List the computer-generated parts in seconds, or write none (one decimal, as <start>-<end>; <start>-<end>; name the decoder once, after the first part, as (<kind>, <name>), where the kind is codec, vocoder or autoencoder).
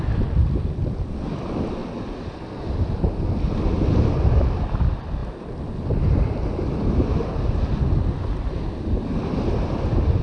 none